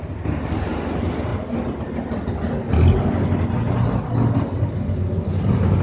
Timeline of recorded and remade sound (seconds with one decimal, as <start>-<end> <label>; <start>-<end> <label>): 0.0-5.8 recorded